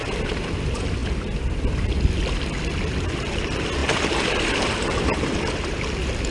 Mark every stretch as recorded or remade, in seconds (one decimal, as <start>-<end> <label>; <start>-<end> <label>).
0.0-1.0 recorded; 1.0-1.6 remade; 1.6-3.8 recorded; 3.8-5.7 remade; 5.7-6.3 recorded